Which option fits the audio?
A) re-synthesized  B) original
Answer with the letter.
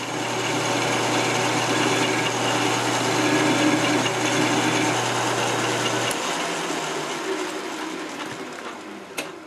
B